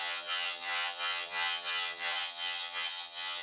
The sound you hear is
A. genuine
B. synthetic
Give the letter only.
B